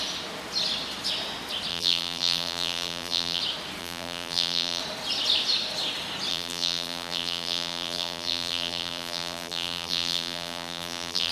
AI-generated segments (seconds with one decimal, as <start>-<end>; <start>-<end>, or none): 1.7-3.4; 3.8-4.8; 6.3-11.3